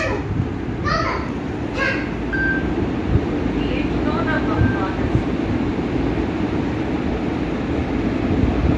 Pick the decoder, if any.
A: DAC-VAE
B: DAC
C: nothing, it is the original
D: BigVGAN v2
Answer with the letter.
C